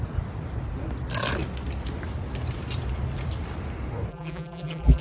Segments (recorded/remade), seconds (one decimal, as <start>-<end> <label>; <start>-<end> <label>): 0.0-4.1 recorded; 4.1-5.0 remade